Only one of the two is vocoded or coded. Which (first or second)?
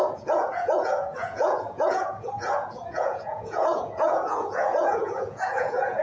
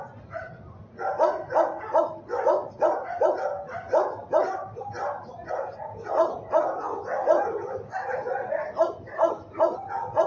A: first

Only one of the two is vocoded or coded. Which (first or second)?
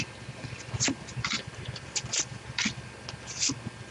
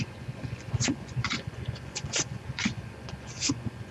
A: second